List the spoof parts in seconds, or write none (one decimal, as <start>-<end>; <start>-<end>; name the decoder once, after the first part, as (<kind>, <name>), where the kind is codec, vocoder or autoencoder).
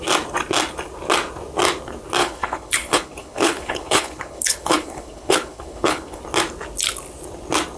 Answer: 2.2-6.2 (codec, HILCodec)